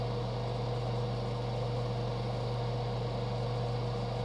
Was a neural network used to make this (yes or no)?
no